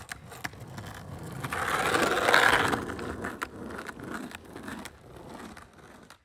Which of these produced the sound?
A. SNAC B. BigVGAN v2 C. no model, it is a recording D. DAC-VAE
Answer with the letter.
C